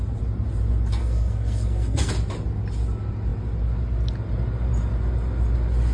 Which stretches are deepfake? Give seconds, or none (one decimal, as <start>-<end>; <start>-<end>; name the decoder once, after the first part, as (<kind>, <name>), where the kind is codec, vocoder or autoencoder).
1.0-2.1 (codec, SNAC)